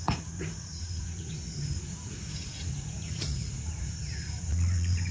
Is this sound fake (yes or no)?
yes